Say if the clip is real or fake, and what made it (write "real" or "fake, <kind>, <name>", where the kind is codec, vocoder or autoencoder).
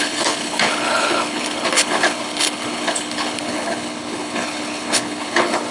fake, codec, HILCodec